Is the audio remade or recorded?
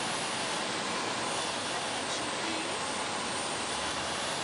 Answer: recorded